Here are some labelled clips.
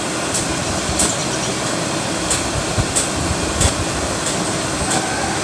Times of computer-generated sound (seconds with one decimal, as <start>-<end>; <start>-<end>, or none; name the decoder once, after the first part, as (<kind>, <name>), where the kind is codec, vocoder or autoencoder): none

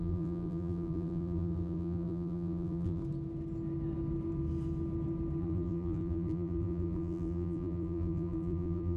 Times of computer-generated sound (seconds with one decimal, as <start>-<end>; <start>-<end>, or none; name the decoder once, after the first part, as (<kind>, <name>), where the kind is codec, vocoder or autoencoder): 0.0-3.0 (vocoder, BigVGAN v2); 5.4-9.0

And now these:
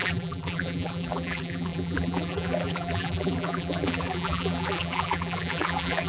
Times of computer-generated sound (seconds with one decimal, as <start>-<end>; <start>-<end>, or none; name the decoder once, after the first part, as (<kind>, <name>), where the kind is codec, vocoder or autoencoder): 0.0-6.1 (vocoder, BigVGAN v2)